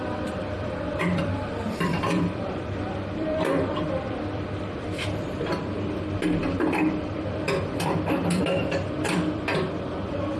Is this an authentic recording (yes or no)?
no